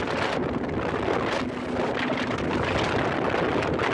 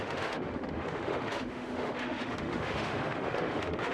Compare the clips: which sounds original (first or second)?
first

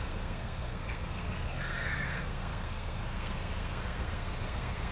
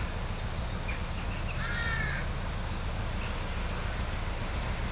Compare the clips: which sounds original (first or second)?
second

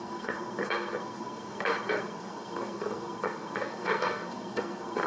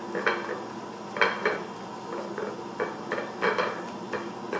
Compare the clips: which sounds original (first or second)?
second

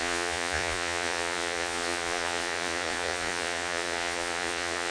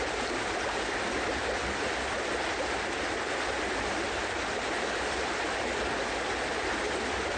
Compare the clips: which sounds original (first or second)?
second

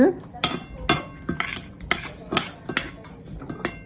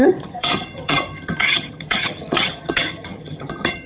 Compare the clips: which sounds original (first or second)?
first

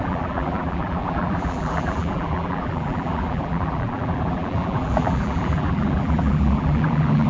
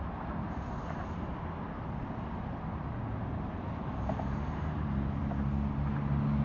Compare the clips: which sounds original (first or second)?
second